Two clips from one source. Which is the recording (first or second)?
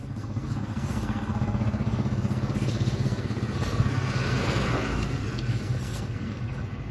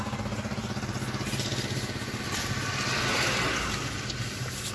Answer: second